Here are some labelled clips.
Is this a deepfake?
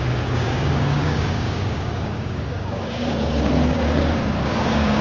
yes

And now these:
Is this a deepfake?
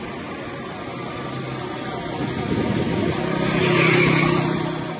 no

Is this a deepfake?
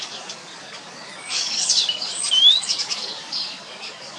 yes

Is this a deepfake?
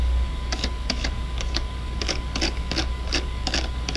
yes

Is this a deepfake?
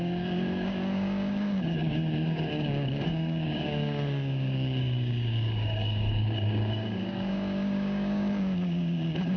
yes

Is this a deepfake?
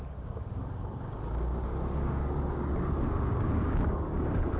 yes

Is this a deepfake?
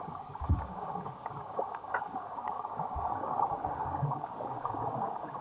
yes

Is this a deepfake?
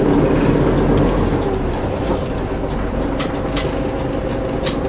no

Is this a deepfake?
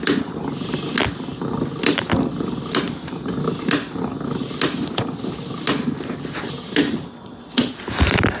no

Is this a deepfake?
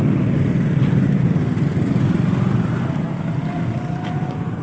no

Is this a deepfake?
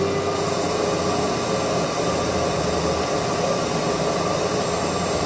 no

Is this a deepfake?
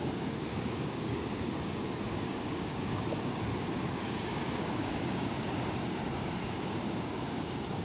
yes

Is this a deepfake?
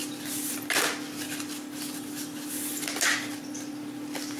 no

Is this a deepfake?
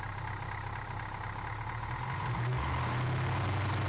no